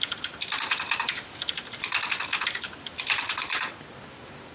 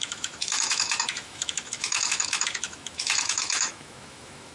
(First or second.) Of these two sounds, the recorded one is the first